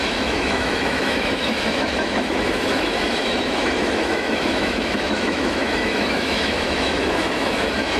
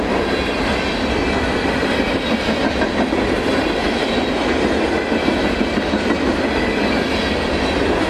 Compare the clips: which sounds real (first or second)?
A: second